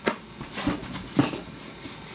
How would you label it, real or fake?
real